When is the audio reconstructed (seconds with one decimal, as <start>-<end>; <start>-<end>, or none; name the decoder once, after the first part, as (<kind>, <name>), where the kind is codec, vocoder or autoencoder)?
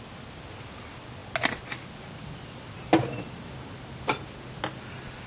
none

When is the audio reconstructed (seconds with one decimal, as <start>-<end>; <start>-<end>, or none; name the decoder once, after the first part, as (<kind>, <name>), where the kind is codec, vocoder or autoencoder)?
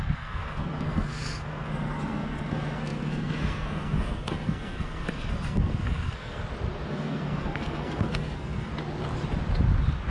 0.0-6.4 (codec, SNAC); 6.9-8.7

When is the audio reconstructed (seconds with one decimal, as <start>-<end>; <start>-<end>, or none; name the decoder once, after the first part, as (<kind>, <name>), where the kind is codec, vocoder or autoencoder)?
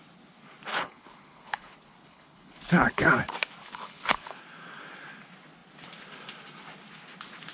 0.7-3.1 (codec, HILCodec); 3.6-4.4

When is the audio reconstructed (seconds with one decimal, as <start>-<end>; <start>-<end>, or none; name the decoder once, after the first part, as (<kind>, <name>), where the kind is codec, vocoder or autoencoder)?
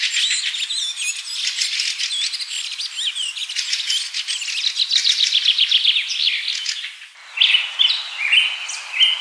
none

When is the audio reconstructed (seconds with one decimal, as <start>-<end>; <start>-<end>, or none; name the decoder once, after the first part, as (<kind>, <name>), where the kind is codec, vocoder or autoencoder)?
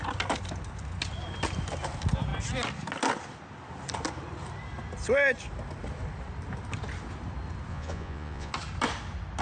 7.7-8.5 (vocoder, Vocos)